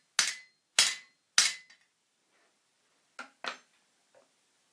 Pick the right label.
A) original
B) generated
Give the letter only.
A